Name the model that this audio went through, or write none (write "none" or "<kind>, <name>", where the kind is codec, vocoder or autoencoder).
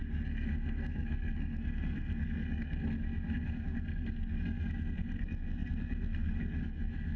codec, SNAC